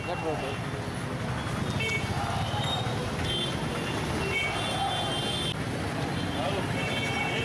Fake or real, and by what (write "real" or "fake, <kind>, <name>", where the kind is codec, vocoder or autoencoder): real